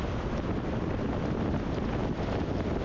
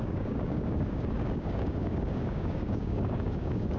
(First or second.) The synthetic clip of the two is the second